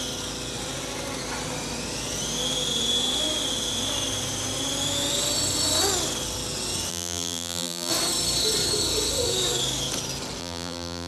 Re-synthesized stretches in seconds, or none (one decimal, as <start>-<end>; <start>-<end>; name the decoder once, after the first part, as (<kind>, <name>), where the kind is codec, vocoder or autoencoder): 6.9-7.9 (vocoder, BigVGAN v2); 10.4-11.1